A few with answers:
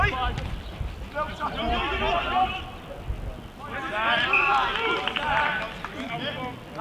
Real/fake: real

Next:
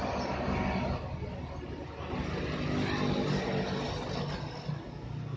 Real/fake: real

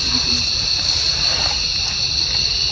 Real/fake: real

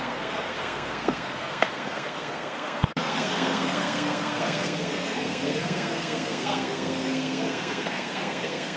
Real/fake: fake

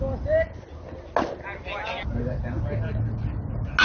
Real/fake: real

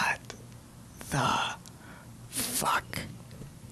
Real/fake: real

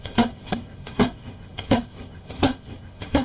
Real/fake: fake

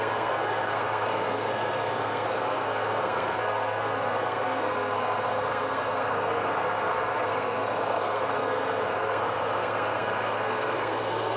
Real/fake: fake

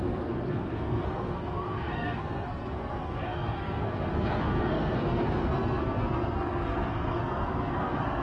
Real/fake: fake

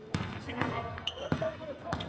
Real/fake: fake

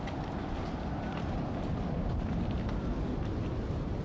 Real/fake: real